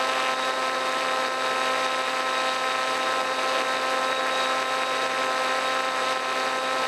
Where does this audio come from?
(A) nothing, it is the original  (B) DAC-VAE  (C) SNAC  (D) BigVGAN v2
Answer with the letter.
A